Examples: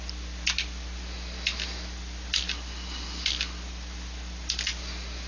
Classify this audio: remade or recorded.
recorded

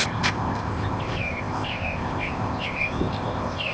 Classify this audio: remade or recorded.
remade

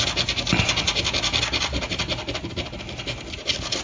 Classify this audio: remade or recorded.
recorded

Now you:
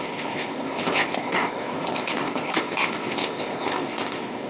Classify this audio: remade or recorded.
remade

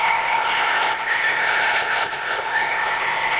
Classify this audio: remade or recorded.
remade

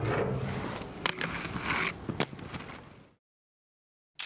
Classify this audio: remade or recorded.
recorded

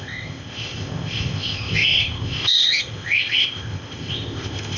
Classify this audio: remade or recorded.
remade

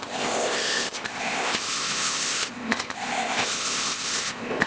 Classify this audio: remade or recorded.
remade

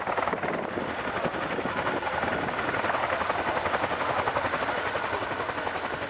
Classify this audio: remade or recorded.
recorded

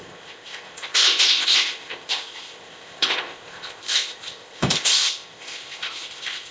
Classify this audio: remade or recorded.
remade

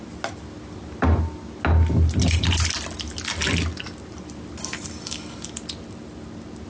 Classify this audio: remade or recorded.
recorded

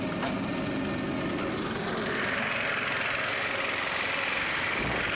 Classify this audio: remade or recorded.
recorded